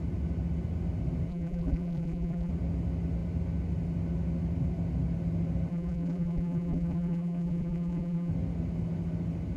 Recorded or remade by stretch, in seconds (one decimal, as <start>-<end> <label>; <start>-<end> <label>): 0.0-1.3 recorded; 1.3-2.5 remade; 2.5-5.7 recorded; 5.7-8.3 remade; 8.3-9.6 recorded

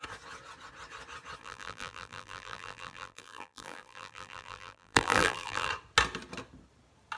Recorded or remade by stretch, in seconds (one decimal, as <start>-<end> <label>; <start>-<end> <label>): 0.0-1.4 recorded; 1.4-5.7 remade; 5.7-7.2 recorded

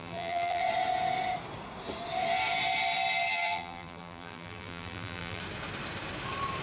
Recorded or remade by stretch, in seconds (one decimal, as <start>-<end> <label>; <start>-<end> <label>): 0.0-0.6 remade; 0.6-3.3 recorded; 3.3-5.4 remade; 5.4-6.6 recorded

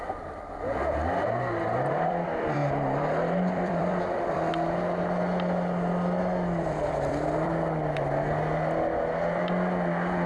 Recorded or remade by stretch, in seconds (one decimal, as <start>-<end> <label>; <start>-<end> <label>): 0.0-2.6 remade; 2.6-3.5 recorded; 3.5-4.5 remade; 4.5-6.6 recorded; 6.6-7.5 remade; 7.5-10.3 recorded

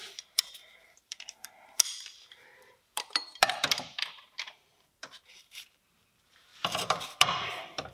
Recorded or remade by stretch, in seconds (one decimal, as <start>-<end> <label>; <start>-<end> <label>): 0.0-7.9 remade